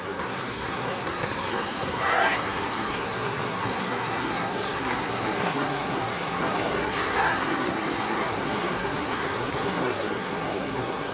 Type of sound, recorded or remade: remade